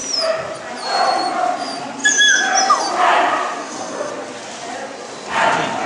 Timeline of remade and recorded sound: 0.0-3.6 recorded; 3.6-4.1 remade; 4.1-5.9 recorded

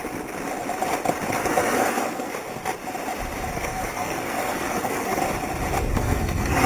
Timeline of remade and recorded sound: 0.0-1.4 recorded; 1.4-2.3 remade; 2.3-3.5 recorded; 3.5-5.2 remade; 5.2-5.9 recorded; 5.9-6.7 remade

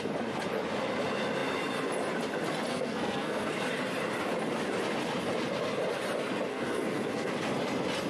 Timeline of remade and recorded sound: 0.0-2.7 recorded; 2.7-3.5 remade; 3.5-6.5 recorded; 6.5-7.3 remade; 7.3-8.1 recorded

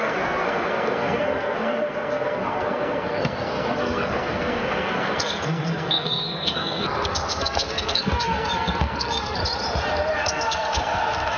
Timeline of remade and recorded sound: 0.0-9.4 remade; 9.4-10.1 recorded; 10.1-11.4 remade

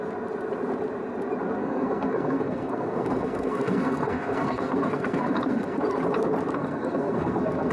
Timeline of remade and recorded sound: 0.0-1.6 recorded; 1.6-5.8 remade; 5.8-6.6 recorded; 6.6-7.7 remade

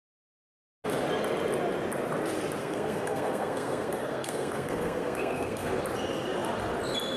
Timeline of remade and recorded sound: 0.0-2.6 recorded; 2.6-5.8 remade; 5.8-7.2 recorded

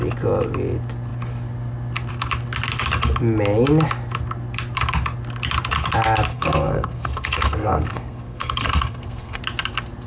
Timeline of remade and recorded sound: 0.0-6.3 recorded; 6.3-9.4 remade; 9.4-10.1 recorded